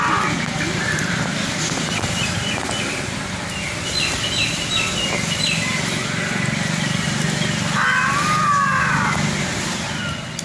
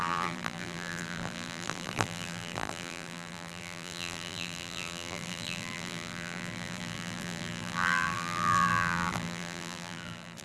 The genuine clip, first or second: first